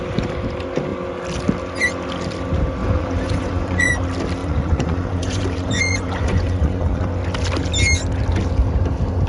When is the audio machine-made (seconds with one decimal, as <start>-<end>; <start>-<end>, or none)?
2.8-3.9; 4.4-7.1